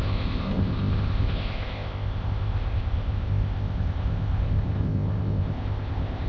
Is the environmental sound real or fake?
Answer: fake